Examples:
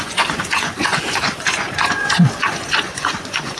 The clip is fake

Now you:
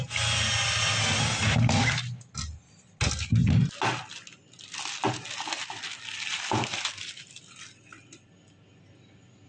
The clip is real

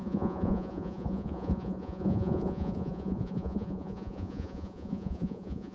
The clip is fake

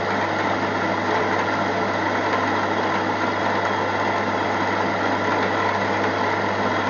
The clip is real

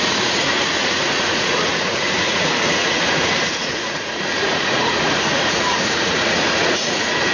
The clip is fake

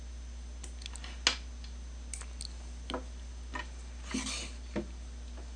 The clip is real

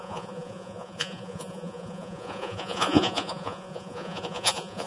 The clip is fake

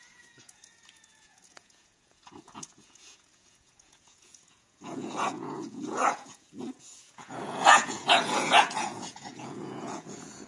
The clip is fake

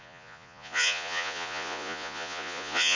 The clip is fake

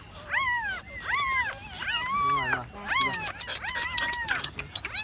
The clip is real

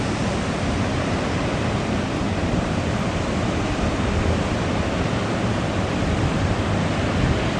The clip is real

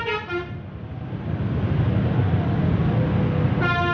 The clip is real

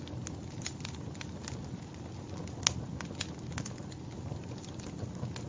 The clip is real